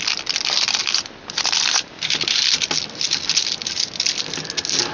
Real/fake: real